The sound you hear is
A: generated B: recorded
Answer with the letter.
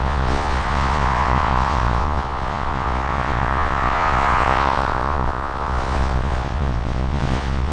A